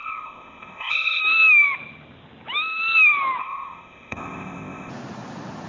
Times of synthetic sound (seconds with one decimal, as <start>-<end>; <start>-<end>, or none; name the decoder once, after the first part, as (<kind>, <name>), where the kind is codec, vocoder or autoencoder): 0.0-1.2 (codec, ZipCodec); 3.4-4.9

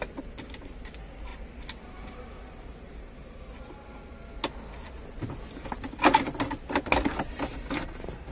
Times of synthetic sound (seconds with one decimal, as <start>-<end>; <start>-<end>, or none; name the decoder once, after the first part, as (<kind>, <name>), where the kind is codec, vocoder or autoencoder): none

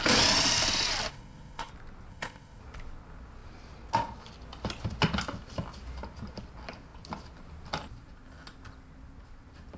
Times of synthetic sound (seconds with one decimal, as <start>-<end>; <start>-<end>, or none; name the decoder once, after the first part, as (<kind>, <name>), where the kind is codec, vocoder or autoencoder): 1.1-1.7 (codec, ZipCodec); 2.1-2.6

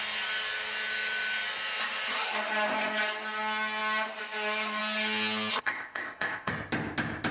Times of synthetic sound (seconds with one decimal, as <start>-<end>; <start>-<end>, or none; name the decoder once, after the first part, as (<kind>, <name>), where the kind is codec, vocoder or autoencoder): 5.5-6.5 (codec, ZipCodec)

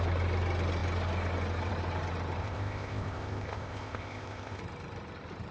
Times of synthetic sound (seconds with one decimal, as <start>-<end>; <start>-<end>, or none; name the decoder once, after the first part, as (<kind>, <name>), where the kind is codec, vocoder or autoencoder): 2.4-4.6 (codec, ZipCodec)

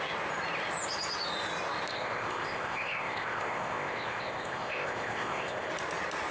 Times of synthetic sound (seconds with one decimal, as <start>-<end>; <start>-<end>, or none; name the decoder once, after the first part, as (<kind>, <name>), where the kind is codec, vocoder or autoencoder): 1.9-5.7 (codec, ZipCodec)